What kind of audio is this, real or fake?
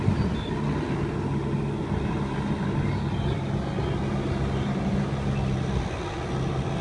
real